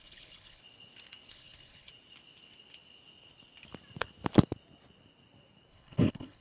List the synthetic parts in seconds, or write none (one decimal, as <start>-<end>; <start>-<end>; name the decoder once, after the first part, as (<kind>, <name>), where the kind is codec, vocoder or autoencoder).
0.0-0.6 (codec, HILCodec); 1.3-1.9; 5.7-6.4